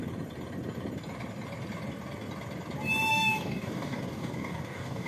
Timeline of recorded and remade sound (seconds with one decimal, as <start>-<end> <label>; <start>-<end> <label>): 0.0-3.1 recorded; 3.1-5.1 remade